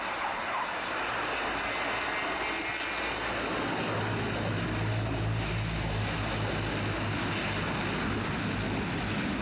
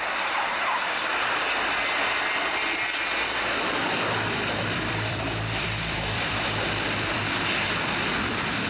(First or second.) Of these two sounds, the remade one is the second